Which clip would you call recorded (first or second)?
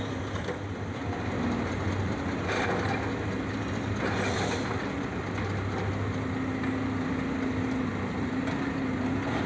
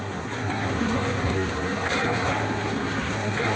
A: first